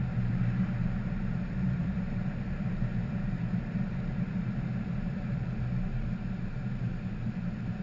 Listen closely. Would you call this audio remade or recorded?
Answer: remade